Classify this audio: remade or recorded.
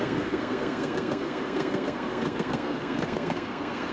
remade